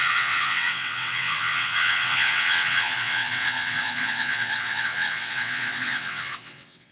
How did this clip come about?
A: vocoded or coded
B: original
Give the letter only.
A